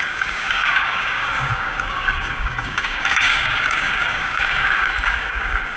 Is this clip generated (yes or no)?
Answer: yes